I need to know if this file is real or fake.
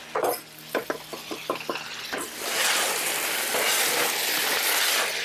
real